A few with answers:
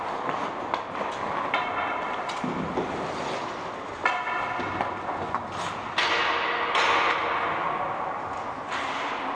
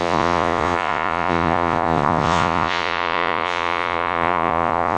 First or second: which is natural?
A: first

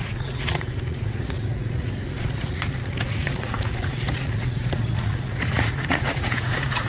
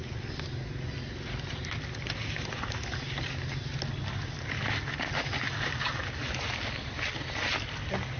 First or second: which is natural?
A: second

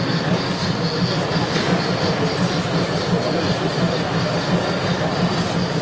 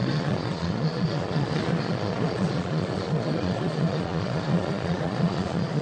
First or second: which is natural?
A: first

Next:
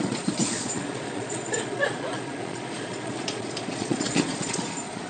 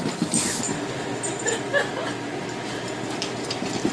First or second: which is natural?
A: second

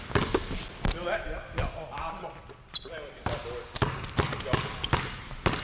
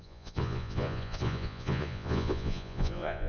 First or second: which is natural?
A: first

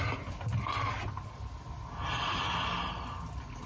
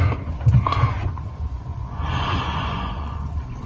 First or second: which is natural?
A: first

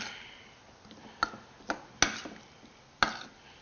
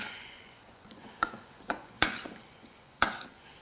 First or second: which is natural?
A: first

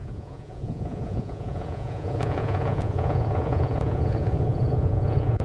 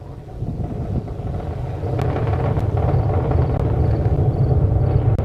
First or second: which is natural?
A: second